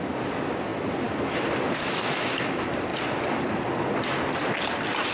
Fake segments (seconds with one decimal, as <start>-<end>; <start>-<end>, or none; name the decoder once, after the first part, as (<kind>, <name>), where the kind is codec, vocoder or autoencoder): none